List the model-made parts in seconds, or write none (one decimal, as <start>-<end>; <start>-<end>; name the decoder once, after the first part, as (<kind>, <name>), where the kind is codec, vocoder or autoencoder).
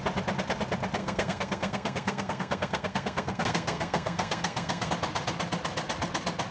1.0-4.9 (codec, SNAC)